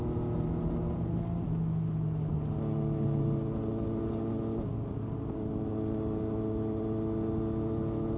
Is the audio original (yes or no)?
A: yes